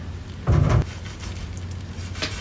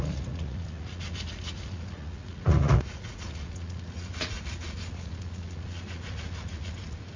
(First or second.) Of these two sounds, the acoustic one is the first